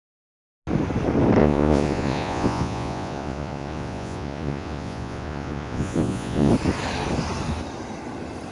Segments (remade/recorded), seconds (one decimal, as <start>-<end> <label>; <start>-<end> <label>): 0.0-1.4 recorded; 1.4-6.5 remade; 6.5-8.5 recorded